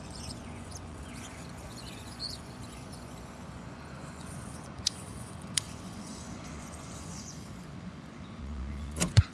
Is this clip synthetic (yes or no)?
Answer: yes